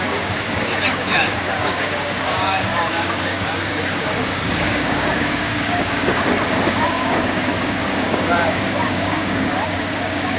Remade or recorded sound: remade